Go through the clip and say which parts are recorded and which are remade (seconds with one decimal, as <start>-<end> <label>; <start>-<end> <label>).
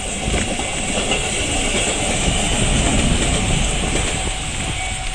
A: 0.0-5.1 recorded